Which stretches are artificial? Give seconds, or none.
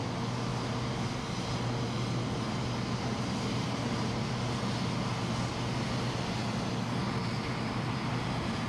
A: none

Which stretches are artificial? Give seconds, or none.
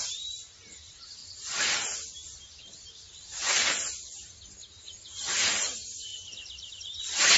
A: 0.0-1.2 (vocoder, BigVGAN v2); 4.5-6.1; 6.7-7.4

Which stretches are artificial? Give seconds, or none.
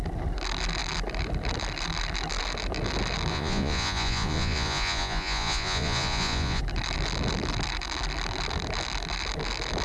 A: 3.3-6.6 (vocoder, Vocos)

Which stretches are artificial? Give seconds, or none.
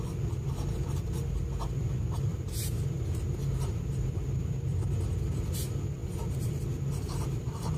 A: 2.3-4.4 (vocoder, BigVGAN v2); 6.0-7.8